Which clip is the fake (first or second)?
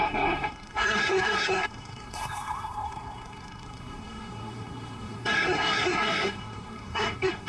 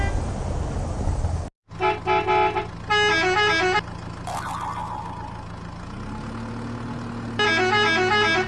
first